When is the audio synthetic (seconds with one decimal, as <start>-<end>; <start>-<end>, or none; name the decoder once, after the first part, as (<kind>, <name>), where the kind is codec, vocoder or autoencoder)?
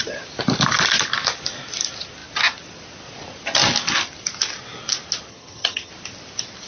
5.3-5.9 (vocoder, HiFi-GAN)